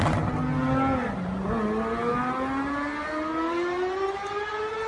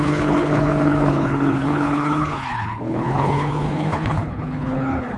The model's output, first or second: second